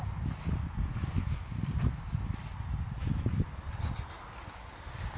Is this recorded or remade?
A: recorded